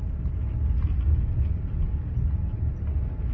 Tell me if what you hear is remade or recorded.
recorded